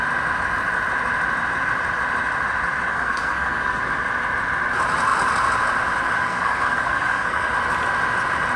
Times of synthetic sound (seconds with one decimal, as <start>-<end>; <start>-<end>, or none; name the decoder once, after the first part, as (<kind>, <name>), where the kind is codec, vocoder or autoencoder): 2.9-3.8 (codec, SNAC); 6.2-7.5